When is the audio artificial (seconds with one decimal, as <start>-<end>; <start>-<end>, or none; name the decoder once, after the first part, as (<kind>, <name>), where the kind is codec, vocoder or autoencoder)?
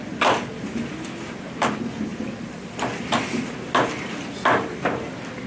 none